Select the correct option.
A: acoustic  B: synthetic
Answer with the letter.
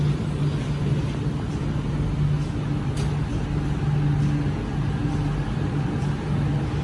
A